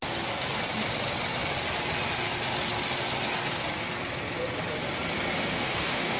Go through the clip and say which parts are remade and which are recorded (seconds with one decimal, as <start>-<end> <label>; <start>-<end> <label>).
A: 0.0-5.5 recorded; 5.5-6.2 remade